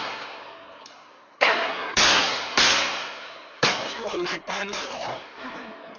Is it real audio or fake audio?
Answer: fake